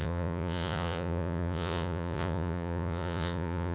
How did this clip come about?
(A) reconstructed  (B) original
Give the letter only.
A